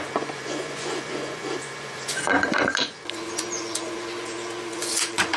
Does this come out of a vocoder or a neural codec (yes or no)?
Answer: yes